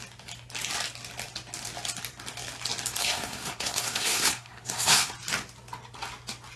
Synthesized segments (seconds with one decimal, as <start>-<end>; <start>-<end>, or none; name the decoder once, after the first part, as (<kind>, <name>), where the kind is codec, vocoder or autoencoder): 3.0-5.1 (codec, SNAC)